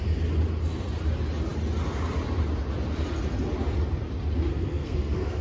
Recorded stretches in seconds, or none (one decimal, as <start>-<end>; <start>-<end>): 0.0-4.5